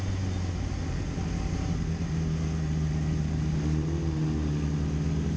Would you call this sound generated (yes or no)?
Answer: no